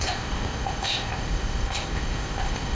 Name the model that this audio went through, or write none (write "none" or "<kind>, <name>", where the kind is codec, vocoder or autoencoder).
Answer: codec, ZipCodec